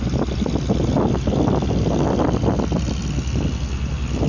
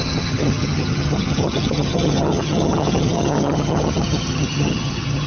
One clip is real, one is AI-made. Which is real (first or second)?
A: first